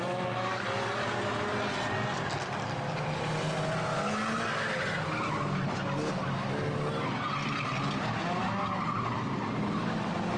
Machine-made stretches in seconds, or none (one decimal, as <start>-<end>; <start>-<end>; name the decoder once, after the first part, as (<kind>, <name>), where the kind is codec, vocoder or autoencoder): none